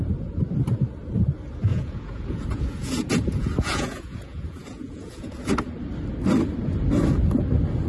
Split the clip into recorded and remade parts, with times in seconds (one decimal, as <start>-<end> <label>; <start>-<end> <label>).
0.0-1.7 recorded; 1.7-5.5 remade; 5.5-7.9 recorded